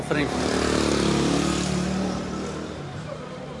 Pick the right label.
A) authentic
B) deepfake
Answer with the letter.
B